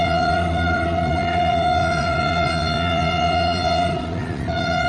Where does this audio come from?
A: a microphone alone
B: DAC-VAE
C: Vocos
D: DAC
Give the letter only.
C